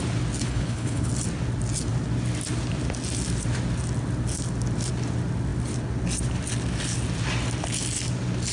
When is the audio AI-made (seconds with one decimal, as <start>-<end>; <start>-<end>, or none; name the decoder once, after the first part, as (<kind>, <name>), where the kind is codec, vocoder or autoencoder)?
0.4-1.1 (codec, HILCodec)